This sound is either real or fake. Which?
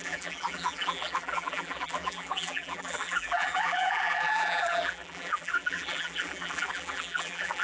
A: fake